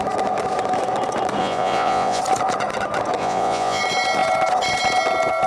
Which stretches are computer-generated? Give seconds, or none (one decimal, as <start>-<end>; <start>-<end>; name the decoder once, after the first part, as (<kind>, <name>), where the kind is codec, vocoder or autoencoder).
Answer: 1.4-2.2 (vocoder, Vocos); 3.2-3.8